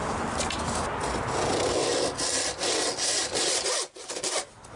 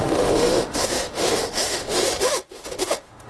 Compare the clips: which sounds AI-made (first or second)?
second